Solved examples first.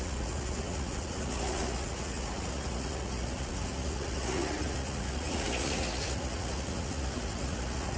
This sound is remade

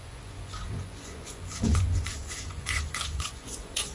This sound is remade